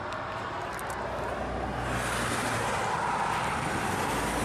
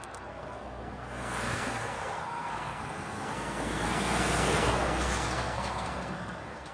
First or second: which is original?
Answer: first